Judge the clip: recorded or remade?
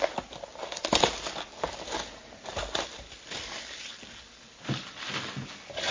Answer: remade